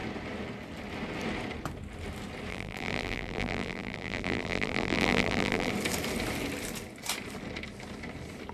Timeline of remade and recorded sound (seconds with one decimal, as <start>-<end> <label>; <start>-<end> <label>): 0.0-2.5 recorded; 2.5-5.7 remade; 5.7-8.5 recorded